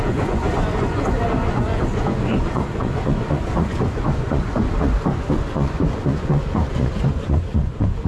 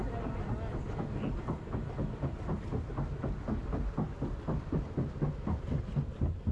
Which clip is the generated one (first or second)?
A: first